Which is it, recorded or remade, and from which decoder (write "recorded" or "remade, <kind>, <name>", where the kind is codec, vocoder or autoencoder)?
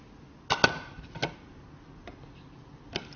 recorded